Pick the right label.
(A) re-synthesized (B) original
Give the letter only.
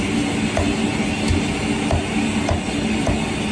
B